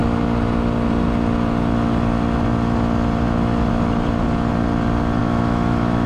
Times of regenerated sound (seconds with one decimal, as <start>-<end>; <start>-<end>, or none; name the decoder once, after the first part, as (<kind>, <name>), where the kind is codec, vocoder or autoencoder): 5.2-6.1 (autoencoder, DAC-VAE)